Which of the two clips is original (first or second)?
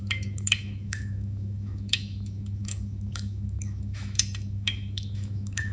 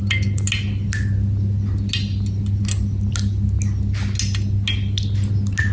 second